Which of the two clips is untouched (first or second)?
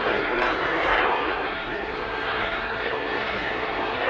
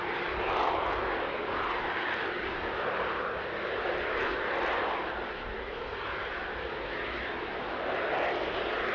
second